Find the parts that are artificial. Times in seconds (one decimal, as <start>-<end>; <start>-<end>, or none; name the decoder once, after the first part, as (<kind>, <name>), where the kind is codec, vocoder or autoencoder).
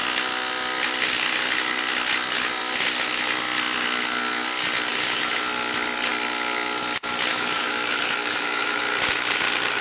7.3-8.8 (autoencoder, DAC-VAE)